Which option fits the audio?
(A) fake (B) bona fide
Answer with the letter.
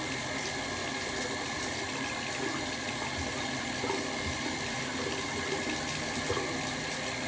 B